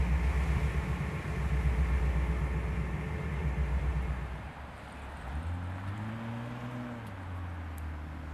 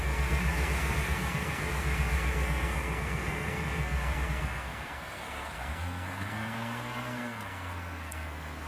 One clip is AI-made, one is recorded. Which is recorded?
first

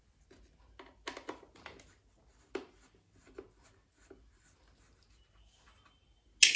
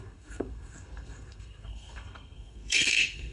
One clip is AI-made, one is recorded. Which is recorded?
first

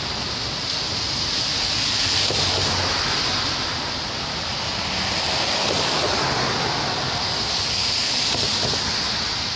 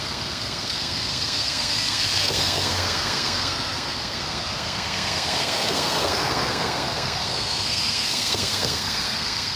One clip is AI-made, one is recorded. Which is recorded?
first